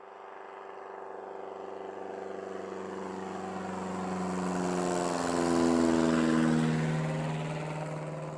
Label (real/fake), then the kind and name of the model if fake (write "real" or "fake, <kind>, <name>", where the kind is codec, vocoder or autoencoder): real